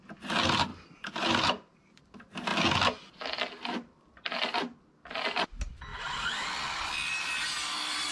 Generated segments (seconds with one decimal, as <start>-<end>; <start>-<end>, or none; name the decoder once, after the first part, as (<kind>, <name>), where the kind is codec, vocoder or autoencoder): 0.7-2.0 (vocoder, BigVGAN v2)